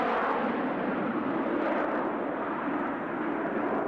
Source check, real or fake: real